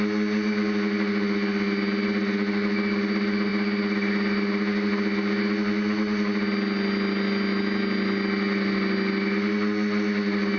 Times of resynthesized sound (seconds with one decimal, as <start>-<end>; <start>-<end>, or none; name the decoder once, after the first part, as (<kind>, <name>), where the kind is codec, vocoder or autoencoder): none